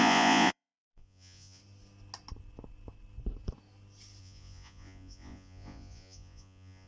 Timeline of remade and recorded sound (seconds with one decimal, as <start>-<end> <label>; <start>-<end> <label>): 0.0-1.6 remade; 1.6-4.2 recorded; 4.2-6.9 remade